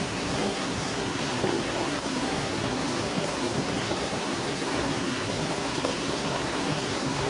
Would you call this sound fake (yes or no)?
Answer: yes